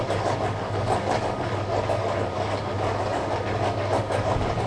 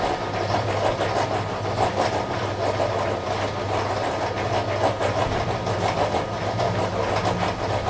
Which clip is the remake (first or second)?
first